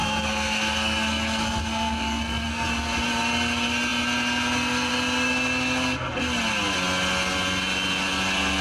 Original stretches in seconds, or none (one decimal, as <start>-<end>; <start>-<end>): 2.7-8.6